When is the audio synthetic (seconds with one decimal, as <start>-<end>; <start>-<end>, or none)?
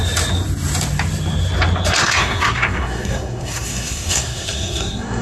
2.0-5.2